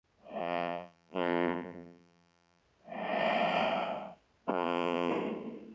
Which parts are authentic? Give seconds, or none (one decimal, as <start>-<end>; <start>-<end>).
0.0-0.4; 2.6-4.5; 5.1-5.7